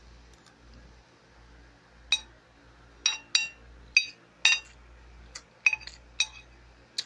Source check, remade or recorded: recorded